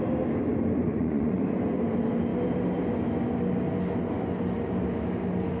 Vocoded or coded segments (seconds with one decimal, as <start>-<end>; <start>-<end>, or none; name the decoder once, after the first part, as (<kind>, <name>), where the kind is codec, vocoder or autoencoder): 0.9-1.4 (vocoder, Vocos)